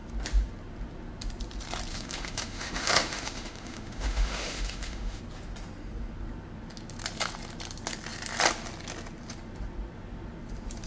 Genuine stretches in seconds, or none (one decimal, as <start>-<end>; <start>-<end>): 0.0-1.9; 5.2-10.9